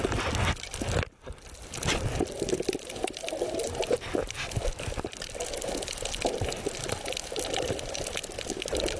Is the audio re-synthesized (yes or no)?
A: no